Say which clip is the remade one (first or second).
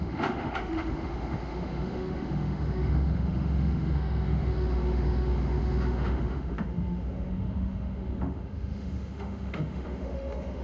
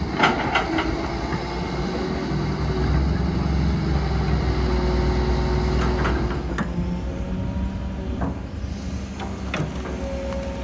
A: first